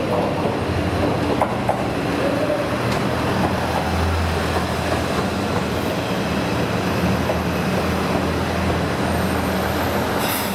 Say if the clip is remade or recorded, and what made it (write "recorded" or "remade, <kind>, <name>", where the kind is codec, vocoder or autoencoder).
recorded